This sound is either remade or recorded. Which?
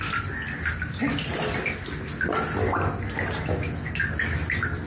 recorded